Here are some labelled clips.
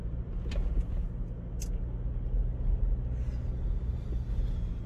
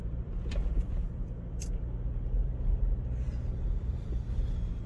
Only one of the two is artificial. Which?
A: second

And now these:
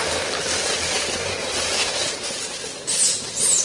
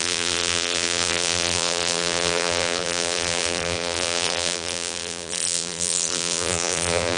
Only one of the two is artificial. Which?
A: second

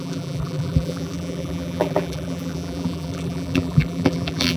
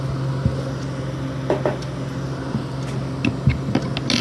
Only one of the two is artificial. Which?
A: first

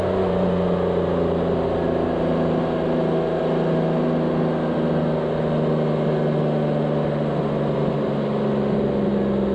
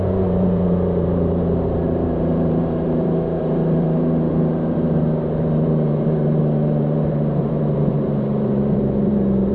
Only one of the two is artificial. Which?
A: second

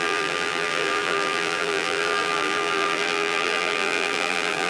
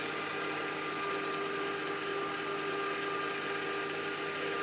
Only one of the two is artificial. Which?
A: first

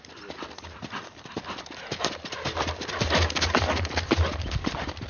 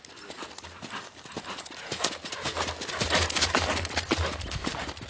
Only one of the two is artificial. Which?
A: first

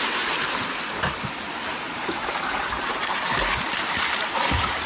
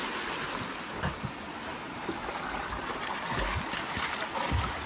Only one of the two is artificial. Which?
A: first